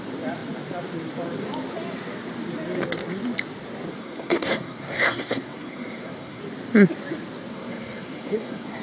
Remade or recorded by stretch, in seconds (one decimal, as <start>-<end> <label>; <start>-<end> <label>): 0.0-3.9 recorded; 3.9-6.4 remade; 6.4-7.5 recorded; 7.5-8.8 remade

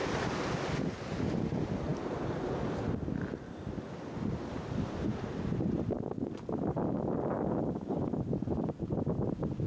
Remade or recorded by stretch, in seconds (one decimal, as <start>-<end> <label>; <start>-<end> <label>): 0.0-9.7 recorded

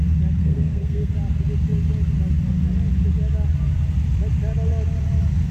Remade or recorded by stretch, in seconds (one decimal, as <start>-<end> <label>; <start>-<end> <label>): 0.0-0.4 recorded; 0.4-1.1 remade; 1.1-5.5 recorded

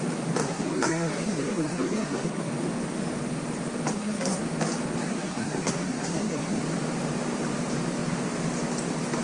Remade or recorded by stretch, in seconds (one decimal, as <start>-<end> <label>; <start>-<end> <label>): 0.0-0.4 recorded; 0.4-2.5 remade; 2.5-3.9 recorded; 3.9-4.4 remade; 4.4-5.0 recorded; 5.0-6.6 remade; 6.6-9.2 recorded

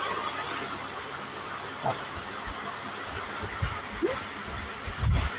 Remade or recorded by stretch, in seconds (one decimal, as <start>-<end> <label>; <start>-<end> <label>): 0.0-5.4 recorded

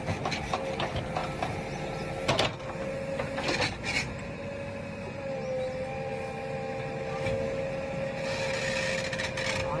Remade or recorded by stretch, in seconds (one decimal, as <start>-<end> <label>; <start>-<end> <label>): 0.0-9.8 recorded